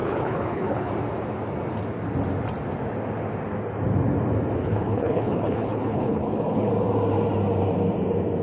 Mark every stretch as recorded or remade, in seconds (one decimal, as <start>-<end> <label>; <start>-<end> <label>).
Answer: 0.0-0.9 remade; 0.9-4.6 recorded; 4.6-6.7 remade; 6.7-8.4 recorded